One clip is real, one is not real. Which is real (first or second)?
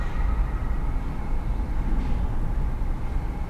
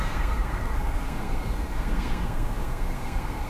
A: first